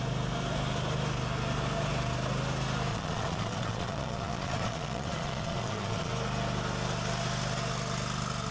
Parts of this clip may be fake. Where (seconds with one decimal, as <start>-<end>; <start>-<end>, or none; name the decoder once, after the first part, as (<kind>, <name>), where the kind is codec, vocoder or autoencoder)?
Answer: 2.9-6.1 (vocoder, Vocos)